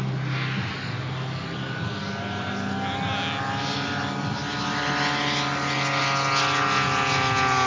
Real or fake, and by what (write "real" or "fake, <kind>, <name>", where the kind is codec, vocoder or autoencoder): real